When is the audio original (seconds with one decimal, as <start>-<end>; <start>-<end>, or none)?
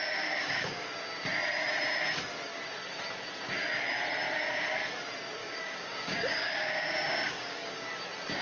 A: 0.9-5.4; 7.9-8.4